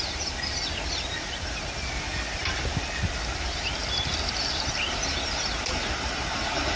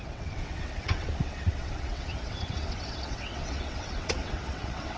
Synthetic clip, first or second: second